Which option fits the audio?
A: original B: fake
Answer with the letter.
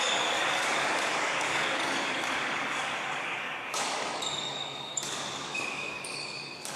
B